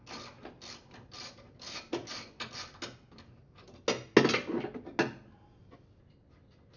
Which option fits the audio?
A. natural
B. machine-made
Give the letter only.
A